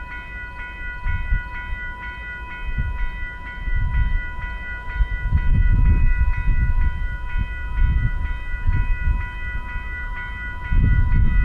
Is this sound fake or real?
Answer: real